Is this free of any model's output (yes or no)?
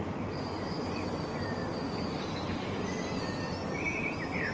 yes